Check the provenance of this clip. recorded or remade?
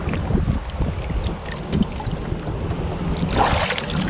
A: recorded